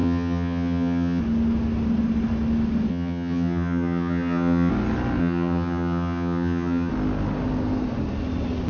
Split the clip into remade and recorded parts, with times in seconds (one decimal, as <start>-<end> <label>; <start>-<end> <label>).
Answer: 0.0-1.2 remade; 1.2-2.9 recorded; 2.9-4.7 remade; 4.7-5.2 recorded; 5.2-6.9 remade; 6.9-8.7 recorded